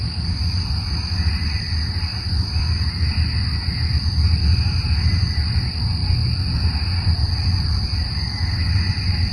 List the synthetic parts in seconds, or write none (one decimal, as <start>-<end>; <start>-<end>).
none